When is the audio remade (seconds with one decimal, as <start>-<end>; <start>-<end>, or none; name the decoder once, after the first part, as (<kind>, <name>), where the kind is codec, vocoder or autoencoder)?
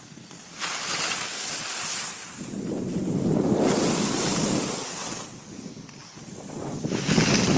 none